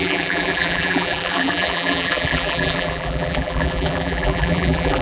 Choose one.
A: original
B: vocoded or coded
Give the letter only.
B